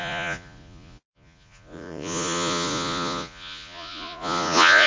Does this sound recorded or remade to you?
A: remade